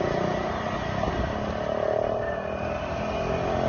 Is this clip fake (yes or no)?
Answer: no